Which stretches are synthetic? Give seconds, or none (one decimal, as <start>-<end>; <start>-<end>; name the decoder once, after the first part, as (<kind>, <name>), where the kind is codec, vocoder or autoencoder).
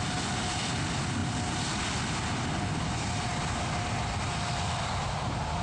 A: none